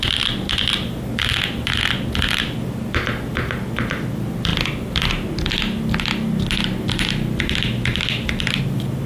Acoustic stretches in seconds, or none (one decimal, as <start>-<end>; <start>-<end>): 0.0-9.1